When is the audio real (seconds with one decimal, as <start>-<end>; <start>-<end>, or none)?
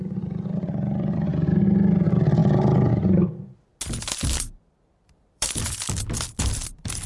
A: 1.3-1.9; 3.7-4.7